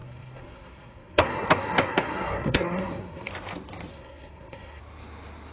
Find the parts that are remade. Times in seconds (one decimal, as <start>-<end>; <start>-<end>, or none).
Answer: 0.0-3.3; 3.9-4.8